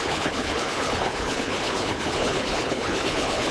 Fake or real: fake